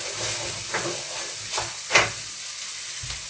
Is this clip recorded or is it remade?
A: recorded